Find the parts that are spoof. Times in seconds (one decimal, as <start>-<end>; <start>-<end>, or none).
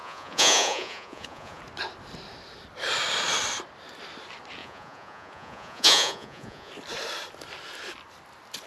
0.0-1.6; 4.6-6.7